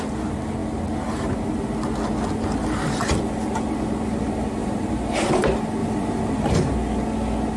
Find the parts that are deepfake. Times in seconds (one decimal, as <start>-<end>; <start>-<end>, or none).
4.6-5.1; 5.8-6.6